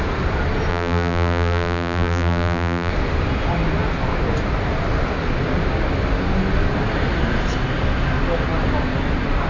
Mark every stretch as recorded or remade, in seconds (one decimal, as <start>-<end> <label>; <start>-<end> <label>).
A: 0.0-0.7 recorded; 0.7-2.9 remade; 2.9-9.5 recorded